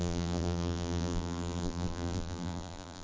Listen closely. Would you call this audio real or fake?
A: fake